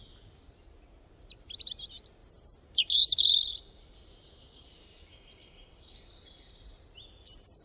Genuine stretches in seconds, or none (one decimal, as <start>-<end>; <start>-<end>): 0.0-2.2; 6.8-7.6